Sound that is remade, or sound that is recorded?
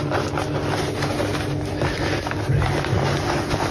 recorded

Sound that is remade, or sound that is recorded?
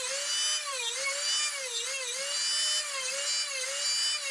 recorded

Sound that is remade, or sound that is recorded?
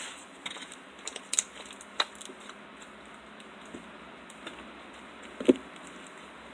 recorded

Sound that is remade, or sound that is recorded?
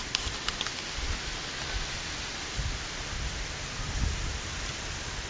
recorded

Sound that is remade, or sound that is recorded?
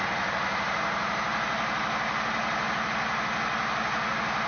recorded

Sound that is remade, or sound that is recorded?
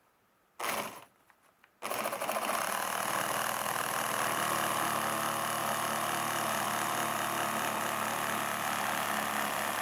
recorded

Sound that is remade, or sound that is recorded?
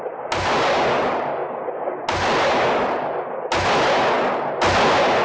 recorded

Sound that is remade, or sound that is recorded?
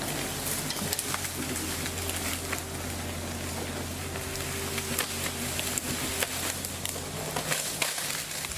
recorded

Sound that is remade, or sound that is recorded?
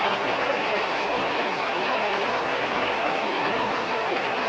remade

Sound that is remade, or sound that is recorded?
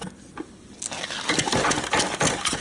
recorded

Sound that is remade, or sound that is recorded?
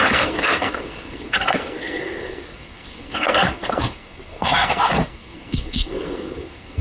remade